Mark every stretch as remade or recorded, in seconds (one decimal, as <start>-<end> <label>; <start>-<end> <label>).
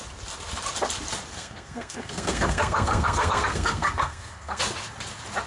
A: 0.0-1.3 recorded; 1.3-4.6 remade; 4.6-5.5 recorded